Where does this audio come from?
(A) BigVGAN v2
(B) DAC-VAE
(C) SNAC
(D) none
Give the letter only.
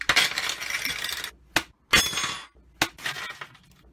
D